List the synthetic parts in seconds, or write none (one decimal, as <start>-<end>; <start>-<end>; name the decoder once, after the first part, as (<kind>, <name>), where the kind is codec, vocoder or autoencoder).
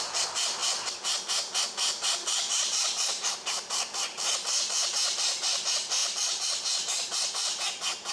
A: 0.0-6.0 (vocoder, BigVGAN v2)